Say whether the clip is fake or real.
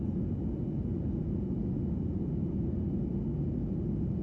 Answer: real